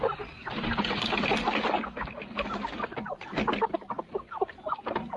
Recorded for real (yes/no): yes